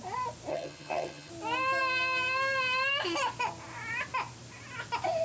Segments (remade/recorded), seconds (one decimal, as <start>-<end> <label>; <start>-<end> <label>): 0.0-0.5 recorded; 0.5-1.3 remade; 1.3-5.2 recorded